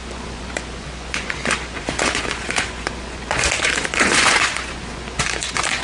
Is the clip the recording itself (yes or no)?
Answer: no